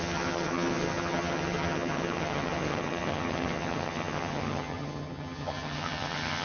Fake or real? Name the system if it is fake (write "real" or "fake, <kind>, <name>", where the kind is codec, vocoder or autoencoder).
fake, vocoder, HiFi-GAN